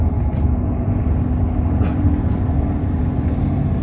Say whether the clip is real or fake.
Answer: real